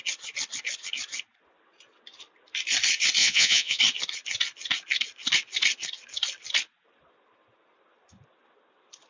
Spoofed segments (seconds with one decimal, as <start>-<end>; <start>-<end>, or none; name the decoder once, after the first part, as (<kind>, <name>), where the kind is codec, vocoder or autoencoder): 3.2-3.8 (vocoder, Vocos)